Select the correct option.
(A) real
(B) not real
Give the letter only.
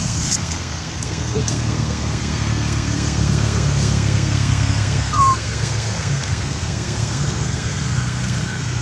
B